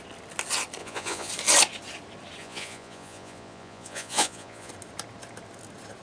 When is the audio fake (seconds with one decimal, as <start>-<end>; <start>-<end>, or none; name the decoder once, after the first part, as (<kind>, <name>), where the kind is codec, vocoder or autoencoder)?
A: 0.8-1.3 (vocoder, Vocos); 2.4-4.7